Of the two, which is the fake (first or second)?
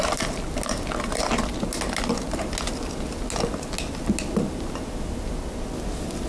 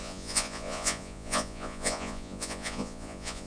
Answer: second